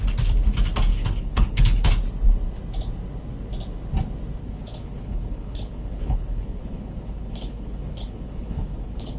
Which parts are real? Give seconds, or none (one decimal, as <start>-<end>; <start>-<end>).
0.0-0.9; 1.9-4.4